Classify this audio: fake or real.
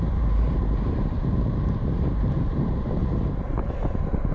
fake